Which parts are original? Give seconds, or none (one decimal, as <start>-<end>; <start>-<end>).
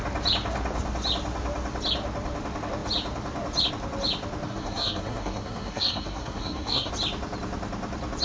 0.0-4.5; 6.9-8.2